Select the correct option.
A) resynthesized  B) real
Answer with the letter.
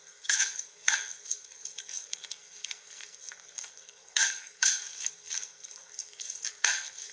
A